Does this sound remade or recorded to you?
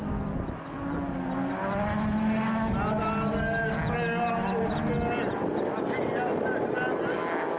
recorded